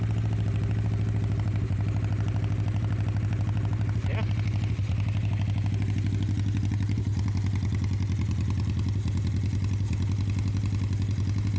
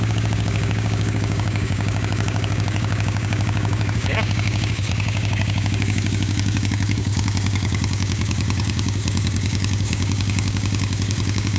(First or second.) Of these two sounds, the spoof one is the second